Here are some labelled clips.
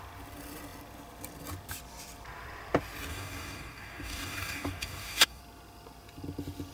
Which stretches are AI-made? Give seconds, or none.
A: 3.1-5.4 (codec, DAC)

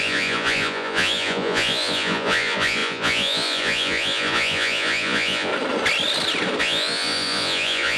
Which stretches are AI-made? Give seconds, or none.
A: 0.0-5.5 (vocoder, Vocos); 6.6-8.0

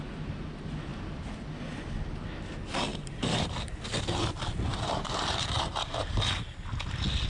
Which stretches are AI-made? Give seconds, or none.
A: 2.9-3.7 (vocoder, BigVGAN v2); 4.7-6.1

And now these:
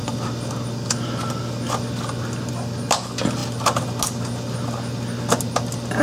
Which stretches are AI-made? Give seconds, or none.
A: none